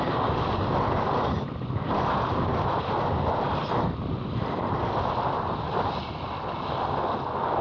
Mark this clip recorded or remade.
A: recorded